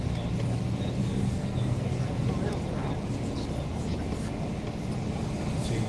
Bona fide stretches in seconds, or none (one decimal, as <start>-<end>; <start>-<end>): 0.0-1.0; 2.1-5.9